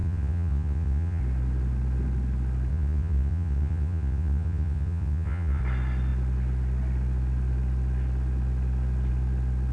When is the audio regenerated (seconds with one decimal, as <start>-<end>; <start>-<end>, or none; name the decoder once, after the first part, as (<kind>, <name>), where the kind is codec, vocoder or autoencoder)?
0.0-1.2 (vocoder, Vocos); 2.7-5.6